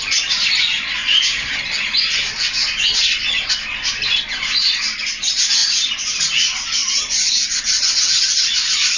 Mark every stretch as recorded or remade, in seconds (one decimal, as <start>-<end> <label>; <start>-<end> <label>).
0.0-9.0 recorded